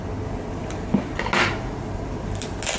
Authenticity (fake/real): real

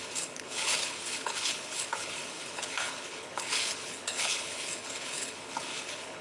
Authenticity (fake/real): fake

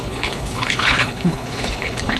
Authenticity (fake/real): fake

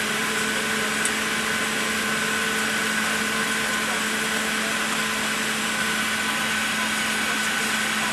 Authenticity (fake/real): real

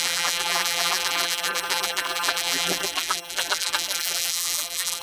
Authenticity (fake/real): fake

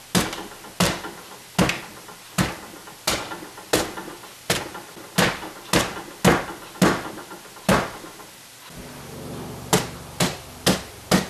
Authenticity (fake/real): real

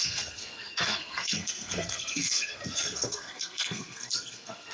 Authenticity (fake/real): fake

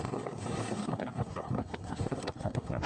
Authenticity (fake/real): fake